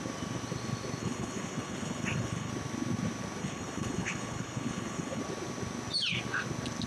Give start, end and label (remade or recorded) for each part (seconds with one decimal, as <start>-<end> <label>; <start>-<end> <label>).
0.0-1.0 recorded; 1.0-2.5 remade; 2.5-3.4 recorded; 3.4-5.2 remade; 5.2-6.9 recorded